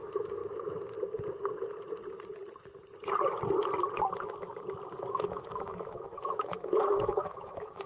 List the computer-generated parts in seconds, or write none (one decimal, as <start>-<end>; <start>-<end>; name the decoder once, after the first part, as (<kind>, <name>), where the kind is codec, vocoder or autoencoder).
0.0-0.4 (autoencoder, DAC-VAE); 5.1-7.9